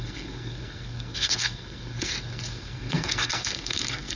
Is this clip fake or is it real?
fake